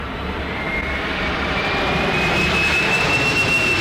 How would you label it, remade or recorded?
remade